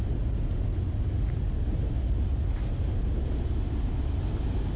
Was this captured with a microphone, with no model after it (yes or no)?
yes